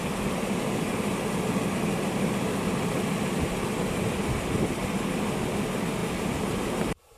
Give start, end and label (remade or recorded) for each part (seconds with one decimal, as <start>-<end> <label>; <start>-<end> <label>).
0.0-6.0 recorded; 6.0-7.2 remade